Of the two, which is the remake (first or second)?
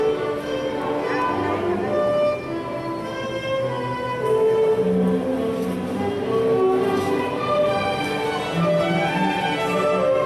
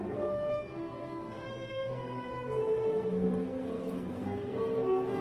second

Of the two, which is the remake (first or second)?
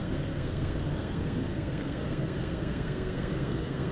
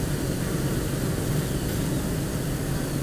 first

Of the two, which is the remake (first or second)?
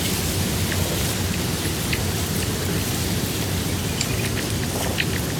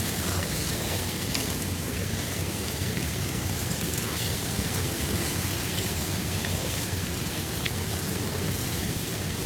second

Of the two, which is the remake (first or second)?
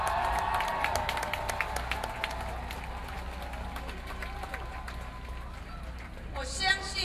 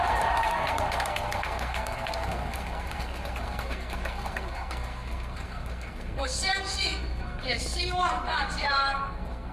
second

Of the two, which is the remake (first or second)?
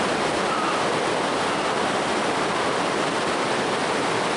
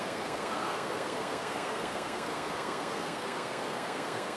second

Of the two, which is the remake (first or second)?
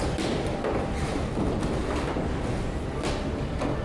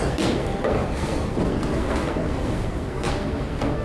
second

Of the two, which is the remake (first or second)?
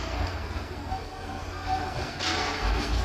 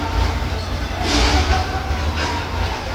first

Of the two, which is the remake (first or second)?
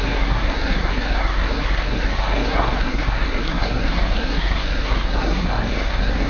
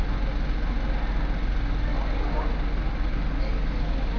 first